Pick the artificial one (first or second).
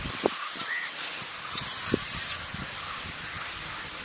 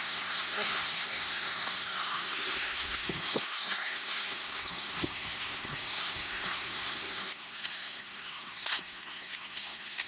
second